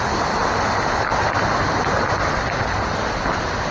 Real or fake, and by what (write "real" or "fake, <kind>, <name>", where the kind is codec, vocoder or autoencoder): real